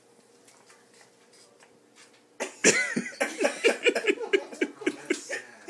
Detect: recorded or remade recorded